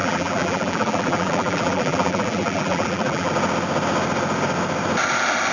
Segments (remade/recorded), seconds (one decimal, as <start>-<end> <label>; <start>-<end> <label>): 0.0-3.3 remade; 3.3-5.5 recorded